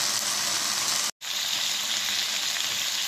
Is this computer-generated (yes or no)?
no